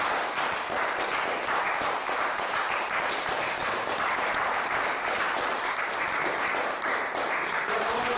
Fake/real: fake